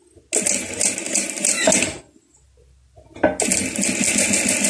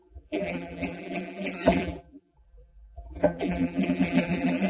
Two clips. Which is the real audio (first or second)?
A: first